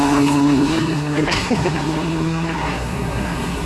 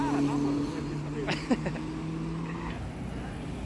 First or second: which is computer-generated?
first